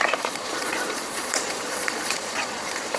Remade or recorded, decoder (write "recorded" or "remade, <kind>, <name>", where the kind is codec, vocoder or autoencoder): remade, vocoder, Vocos